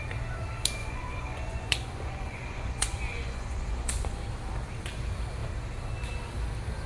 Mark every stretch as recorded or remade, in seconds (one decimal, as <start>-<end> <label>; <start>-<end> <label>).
0.0-0.8 recorded; 0.8-4.2 remade; 4.2-6.9 recorded